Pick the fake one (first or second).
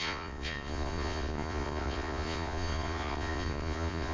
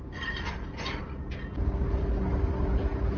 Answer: first